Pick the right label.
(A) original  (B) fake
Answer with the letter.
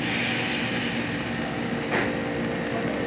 A